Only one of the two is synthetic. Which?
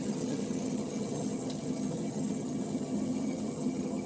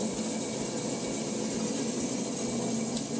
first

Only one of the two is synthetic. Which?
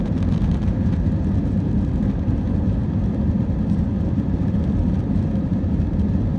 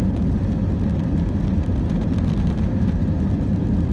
first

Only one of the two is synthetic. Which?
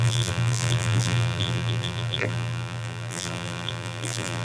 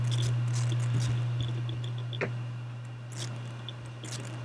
first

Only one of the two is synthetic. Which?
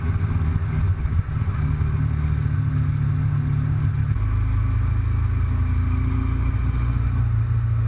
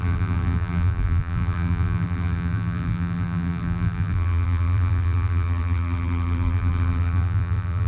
second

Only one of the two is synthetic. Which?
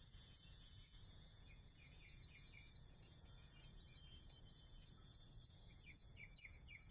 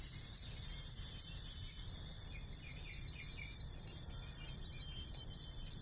first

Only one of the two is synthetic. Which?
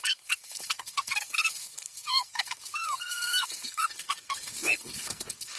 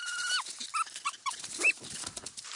first